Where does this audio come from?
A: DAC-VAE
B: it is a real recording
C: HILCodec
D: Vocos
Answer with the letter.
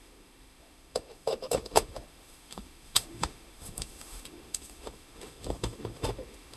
A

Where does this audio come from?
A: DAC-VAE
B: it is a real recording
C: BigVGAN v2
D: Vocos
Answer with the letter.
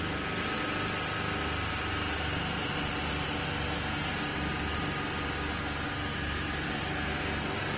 B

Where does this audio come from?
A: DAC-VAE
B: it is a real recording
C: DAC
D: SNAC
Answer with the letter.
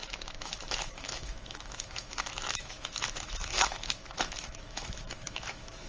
A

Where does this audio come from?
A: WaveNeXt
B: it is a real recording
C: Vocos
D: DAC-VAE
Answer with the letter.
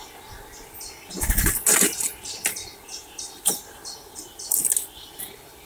B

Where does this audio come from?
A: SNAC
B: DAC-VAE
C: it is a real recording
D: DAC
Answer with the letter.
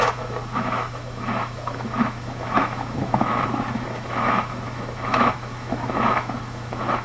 B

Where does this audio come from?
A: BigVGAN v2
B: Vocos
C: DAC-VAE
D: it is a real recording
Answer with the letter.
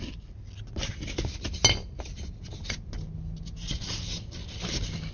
D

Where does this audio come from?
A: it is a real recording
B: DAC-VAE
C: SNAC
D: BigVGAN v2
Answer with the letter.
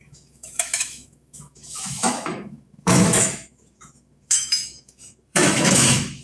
B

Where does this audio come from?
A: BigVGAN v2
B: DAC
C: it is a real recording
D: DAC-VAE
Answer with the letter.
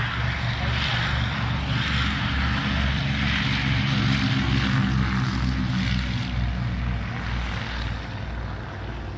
C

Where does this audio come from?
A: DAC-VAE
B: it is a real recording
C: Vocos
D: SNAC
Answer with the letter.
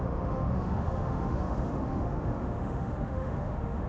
A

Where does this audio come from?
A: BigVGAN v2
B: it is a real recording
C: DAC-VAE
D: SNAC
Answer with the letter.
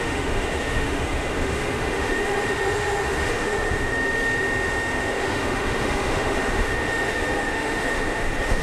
C